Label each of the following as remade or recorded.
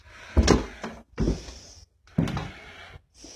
recorded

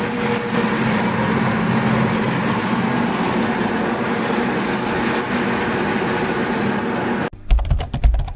recorded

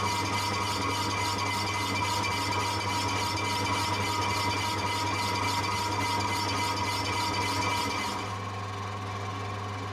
recorded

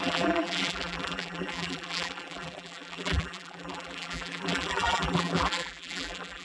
remade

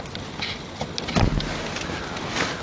recorded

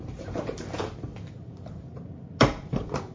remade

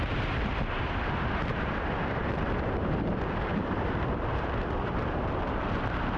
remade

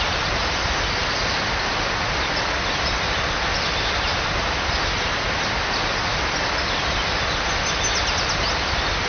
recorded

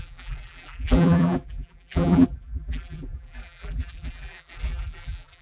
remade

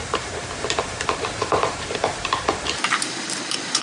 remade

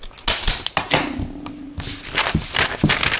recorded